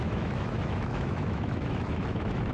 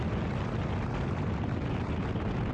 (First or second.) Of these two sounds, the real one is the second